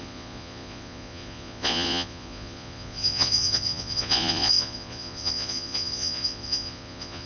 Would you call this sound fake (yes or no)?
yes